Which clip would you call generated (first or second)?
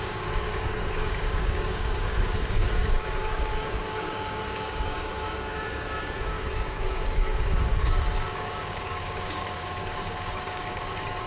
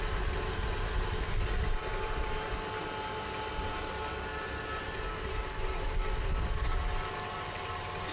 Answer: first